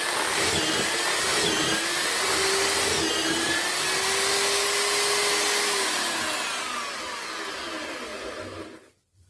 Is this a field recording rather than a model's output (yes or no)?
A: yes